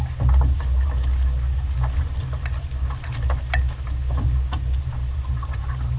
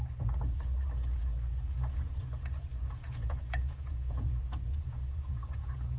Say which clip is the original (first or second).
first